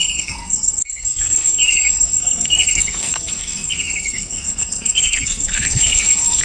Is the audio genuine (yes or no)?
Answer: no